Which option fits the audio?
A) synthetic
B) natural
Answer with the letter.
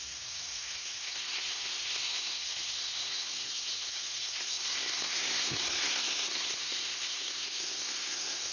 A